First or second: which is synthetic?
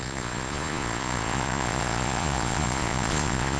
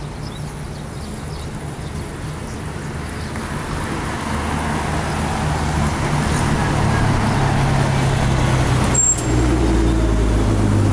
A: first